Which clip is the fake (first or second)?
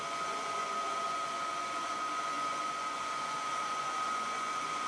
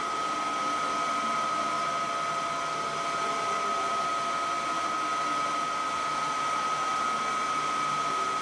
first